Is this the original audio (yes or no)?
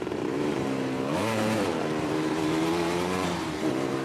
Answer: no